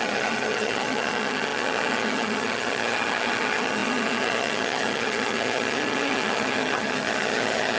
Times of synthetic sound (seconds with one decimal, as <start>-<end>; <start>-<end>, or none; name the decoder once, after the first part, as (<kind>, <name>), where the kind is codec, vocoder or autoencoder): 0.0-7.8 (vocoder, HiFi-GAN)